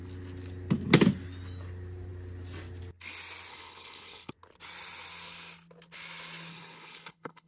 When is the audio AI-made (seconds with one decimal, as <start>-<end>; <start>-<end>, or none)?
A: 3.5-4.3; 6.5-7.5